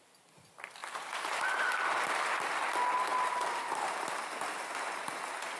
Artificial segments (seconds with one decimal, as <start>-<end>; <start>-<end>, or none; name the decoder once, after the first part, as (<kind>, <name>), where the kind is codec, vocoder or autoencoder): 0.8-1.5 (vocoder, BigVGAN v2)